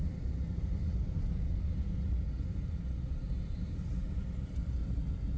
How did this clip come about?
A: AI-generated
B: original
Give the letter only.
B